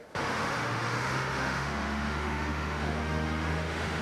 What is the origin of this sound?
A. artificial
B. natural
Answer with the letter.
A